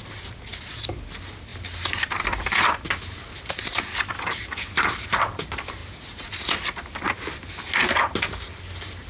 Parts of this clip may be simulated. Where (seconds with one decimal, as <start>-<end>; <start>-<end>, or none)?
3.9-4.7